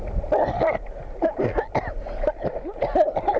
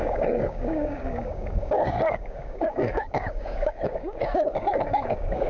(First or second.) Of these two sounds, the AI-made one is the second